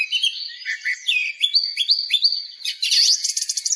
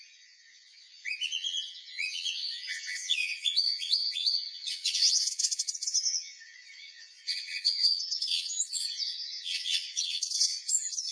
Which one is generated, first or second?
second